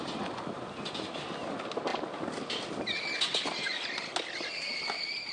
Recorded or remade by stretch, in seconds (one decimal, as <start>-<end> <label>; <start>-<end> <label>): 0.0-5.3 recorded